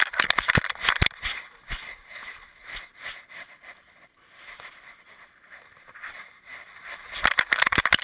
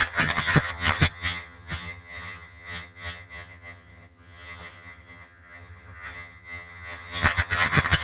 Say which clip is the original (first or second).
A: first